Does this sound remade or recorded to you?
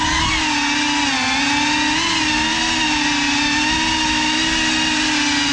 recorded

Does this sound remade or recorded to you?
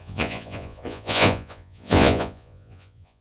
remade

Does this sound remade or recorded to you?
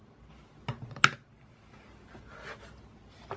recorded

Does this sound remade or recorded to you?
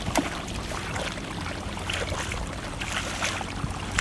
recorded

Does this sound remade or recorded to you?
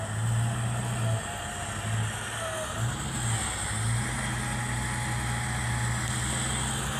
recorded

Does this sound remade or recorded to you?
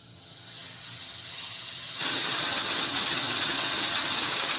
remade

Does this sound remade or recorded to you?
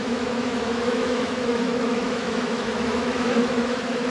remade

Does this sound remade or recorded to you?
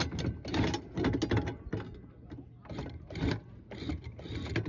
recorded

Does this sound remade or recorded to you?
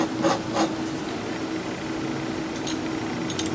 recorded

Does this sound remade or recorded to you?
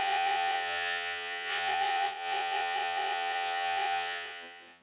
remade